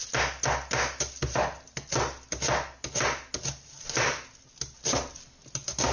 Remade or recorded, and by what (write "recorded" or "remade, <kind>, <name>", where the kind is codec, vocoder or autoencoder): recorded